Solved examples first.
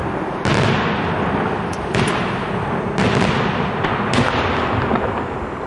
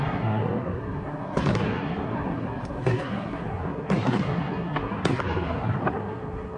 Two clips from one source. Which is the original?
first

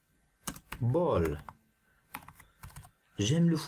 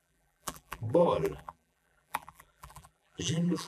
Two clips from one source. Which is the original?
first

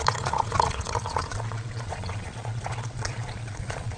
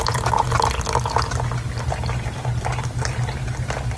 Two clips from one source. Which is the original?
second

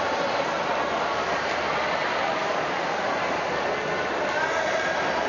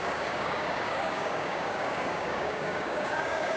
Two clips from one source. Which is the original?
first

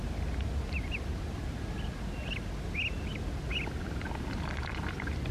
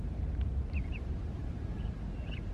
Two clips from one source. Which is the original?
first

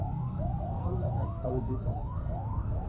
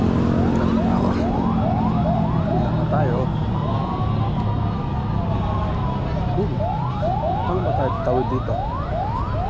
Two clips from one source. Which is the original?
second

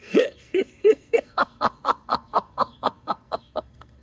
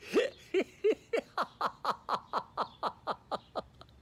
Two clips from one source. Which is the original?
second